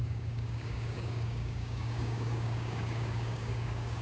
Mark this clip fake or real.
fake